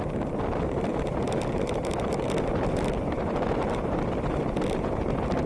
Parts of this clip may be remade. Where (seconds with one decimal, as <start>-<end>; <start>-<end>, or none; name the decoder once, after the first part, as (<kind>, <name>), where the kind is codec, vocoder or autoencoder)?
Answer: none